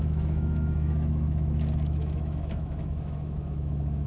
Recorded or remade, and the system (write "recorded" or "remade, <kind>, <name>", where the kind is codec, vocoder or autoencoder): remade, autoencoder, DAC-VAE